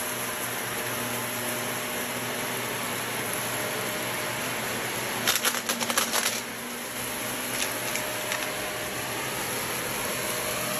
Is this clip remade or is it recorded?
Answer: recorded